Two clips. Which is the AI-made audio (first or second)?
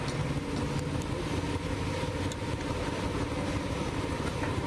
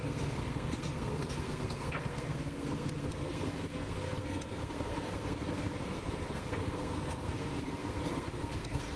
second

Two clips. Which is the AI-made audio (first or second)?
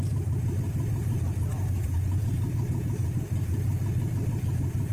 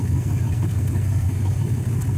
second